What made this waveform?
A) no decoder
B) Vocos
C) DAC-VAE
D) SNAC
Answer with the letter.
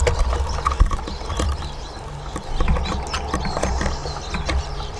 A